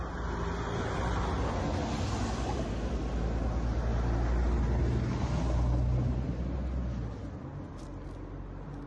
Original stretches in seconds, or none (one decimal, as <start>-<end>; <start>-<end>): 0.0-8.9